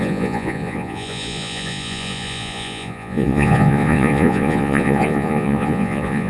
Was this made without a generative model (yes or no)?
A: no